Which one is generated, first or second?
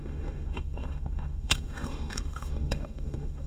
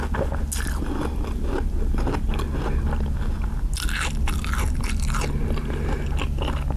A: first